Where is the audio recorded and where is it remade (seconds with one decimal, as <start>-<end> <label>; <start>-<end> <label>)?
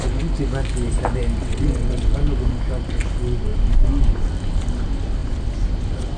0.0-1.4 recorded; 1.4-2.1 remade; 2.1-6.2 recorded